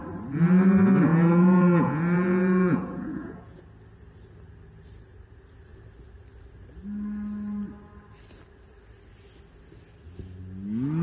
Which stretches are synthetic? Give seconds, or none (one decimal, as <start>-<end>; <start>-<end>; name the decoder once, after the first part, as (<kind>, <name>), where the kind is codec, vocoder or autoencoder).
1.1-3.6 (vocoder, Vocos)